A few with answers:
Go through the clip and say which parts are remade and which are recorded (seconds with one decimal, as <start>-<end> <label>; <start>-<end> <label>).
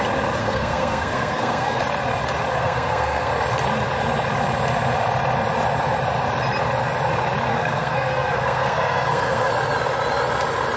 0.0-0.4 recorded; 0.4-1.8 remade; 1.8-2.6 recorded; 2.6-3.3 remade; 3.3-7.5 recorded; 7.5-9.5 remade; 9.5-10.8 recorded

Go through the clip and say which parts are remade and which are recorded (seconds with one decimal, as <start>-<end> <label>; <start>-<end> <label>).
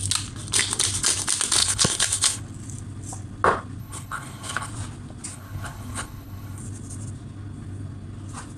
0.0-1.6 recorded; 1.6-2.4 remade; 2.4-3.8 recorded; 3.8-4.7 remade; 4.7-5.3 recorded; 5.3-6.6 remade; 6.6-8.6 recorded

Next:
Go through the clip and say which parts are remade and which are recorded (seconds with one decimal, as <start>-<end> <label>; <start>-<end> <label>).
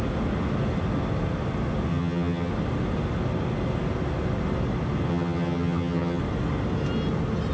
0.0-1.9 recorded; 1.9-2.5 remade; 2.5-5.1 recorded; 5.1-6.2 remade; 6.2-7.5 recorded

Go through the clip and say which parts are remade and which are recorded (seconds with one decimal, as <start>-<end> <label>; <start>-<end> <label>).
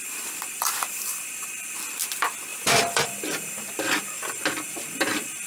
0.0-1.5 remade; 1.5-2.5 recorded; 2.5-3.7 remade; 3.7-5.5 recorded